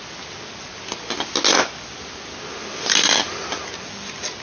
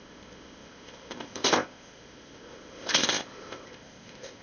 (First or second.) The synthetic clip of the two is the second